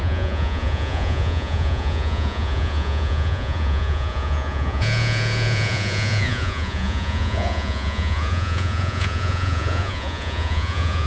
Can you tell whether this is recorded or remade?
remade